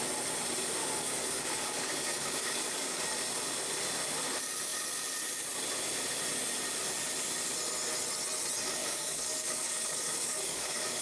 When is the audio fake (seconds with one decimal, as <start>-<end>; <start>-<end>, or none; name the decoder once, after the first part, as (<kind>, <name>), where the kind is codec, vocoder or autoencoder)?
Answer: 0.8-3.0 (codec, DAC); 8.8-11.0